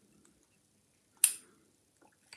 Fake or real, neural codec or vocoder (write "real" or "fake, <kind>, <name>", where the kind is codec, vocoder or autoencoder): real